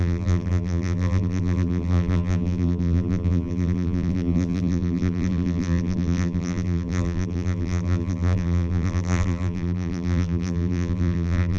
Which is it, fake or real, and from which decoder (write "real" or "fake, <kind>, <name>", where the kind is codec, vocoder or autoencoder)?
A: fake, vocoder, BigVGAN v2